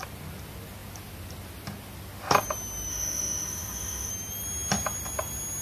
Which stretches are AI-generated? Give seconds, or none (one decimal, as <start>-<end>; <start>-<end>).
2.9-4.1